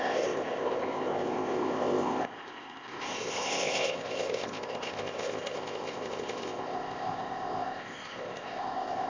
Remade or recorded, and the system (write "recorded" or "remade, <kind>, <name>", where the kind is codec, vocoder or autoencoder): remade, codec, ZipCodec